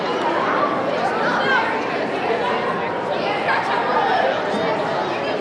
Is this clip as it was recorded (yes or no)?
yes